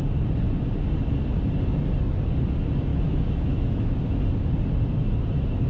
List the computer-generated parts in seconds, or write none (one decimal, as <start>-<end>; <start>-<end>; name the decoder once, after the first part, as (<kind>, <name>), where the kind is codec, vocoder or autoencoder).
2.9-3.9 (autoencoder, DAC-VAE)